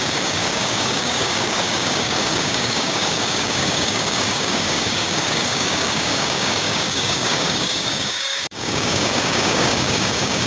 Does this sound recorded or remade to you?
remade